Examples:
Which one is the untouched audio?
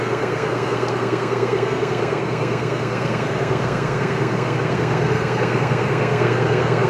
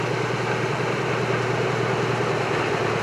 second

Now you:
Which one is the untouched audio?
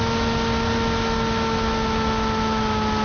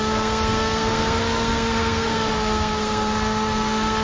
first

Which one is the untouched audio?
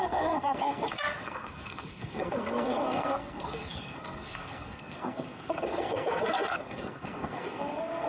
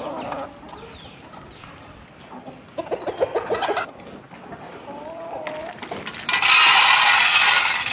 second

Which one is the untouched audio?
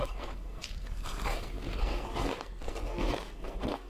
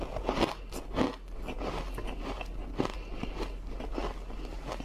second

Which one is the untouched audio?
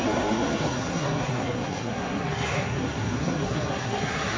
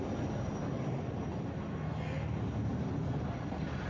second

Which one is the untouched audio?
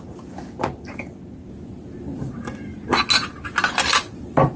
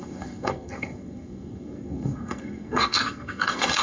first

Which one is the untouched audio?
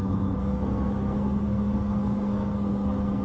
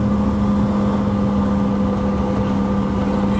second